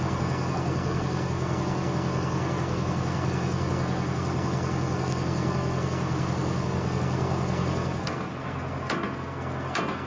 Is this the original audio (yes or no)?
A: no